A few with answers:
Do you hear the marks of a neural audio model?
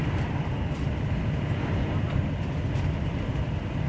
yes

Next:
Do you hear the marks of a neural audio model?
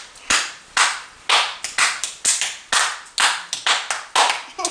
no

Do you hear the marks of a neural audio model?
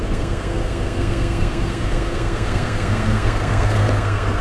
yes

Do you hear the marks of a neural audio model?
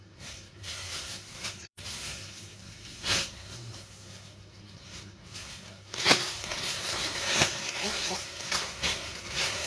yes